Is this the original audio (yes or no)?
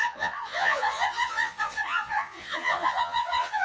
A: no